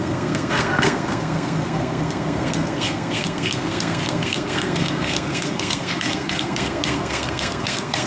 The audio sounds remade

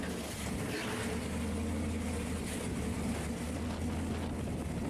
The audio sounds recorded